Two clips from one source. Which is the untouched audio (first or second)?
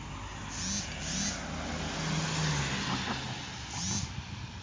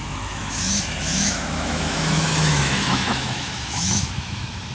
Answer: first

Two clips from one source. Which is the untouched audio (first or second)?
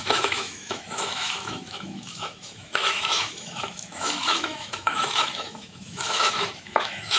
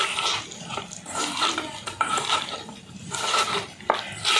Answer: second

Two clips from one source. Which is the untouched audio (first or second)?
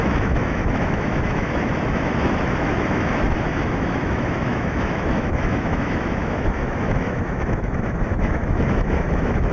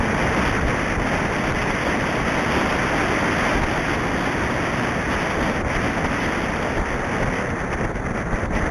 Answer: second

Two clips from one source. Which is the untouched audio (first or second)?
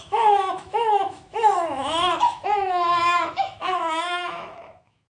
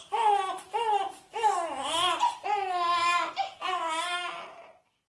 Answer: second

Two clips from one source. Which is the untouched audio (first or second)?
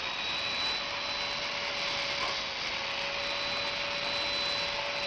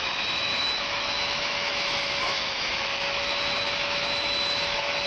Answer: first